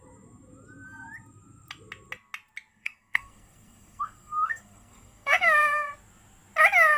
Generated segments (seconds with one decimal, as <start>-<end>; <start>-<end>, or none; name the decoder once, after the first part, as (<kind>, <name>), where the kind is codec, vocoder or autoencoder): 2.7-5.9 (codec, SNAC)